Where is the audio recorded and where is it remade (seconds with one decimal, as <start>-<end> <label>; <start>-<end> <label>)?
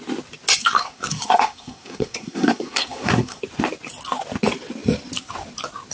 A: 0.0-0.6 recorded; 0.6-3.4 remade; 3.4-5.9 recorded